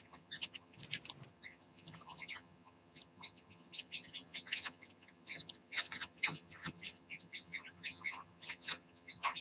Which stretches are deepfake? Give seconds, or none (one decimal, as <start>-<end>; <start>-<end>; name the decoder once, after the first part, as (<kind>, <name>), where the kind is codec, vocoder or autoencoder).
0.0-0.8 (vocoder, HiFi-GAN); 1.3-9.4